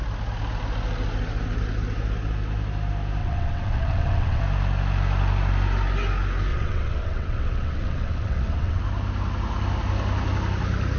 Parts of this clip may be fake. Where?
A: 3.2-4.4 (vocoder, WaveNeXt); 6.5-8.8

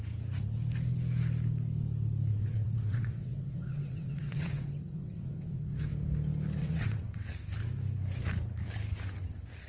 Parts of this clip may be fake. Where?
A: 2.3-5.9 (vocoder, WaveNeXt); 6.6-7.3

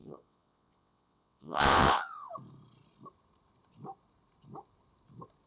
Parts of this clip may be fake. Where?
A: 0.0-2.3 (vocoder, WaveNeXt)

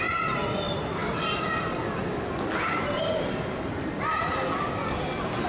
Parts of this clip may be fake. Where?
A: none

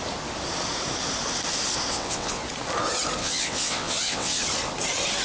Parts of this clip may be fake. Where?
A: 1.9-2.4 (vocoder, WaveNeXt); 3.2-4.4

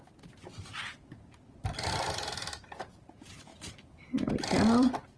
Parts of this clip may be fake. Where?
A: none

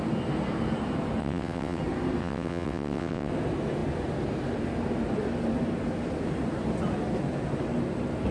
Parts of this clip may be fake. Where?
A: 1.2-1.8 (vocoder, WaveNeXt); 2.2-3.3

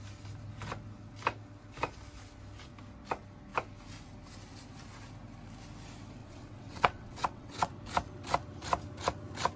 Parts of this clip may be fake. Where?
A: 6.2-7.7 (vocoder, WaveNeXt)